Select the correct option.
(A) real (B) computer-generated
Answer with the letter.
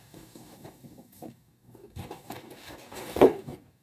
B